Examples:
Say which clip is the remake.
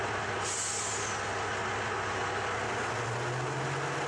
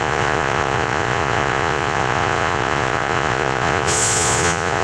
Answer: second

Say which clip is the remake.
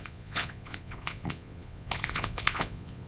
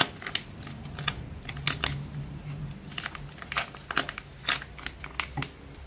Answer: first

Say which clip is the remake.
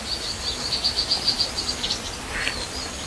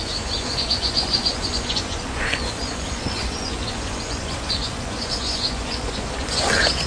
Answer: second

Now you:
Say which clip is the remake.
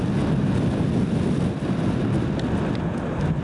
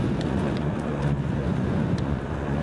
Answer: second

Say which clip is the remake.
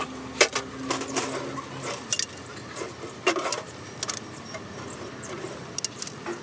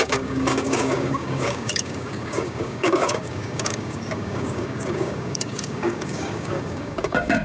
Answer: second